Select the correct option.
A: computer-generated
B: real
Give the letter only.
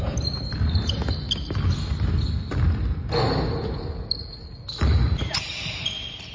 B